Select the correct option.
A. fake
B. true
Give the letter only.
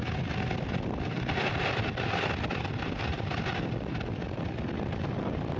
B